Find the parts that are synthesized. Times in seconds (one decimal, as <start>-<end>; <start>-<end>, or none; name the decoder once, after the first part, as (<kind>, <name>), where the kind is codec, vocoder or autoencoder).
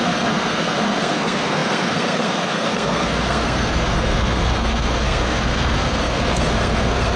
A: 0.0-7.2 (codec, SNAC)